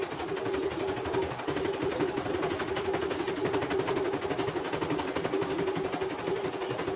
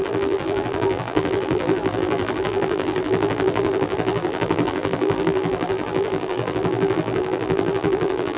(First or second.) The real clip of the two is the first